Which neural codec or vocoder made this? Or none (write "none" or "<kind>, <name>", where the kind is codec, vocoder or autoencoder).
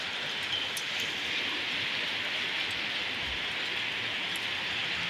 none